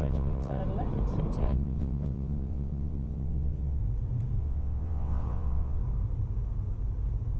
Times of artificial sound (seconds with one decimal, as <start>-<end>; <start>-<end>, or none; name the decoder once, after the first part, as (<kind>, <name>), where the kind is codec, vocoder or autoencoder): 0.0-0.6 (vocoder, WaveNeXt); 1.4-3.8; 4.4-5.8